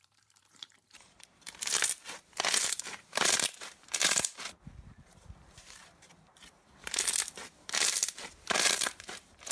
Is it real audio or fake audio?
fake